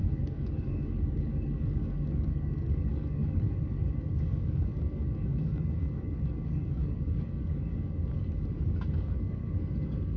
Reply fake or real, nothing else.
fake